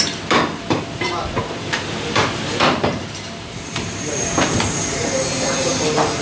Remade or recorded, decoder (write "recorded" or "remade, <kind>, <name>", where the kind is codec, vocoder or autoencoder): remade, vocoder, BigVGAN v2